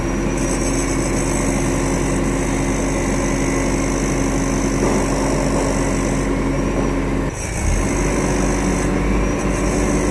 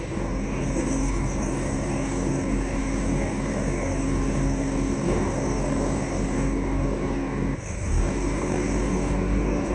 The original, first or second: first